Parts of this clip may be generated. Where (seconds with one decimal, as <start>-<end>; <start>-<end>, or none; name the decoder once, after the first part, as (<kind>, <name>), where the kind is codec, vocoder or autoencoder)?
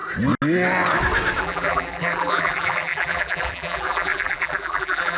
1.4-5.2 (vocoder, BigVGAN v2)